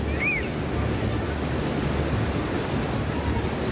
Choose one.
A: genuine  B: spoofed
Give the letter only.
A